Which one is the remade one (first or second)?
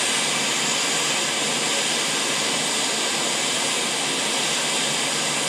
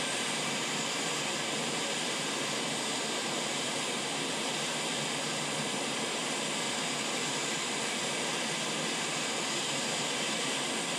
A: second